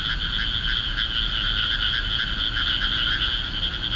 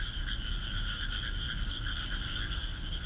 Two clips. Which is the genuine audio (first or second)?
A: first